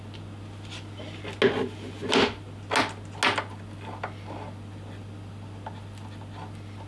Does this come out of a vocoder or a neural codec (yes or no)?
no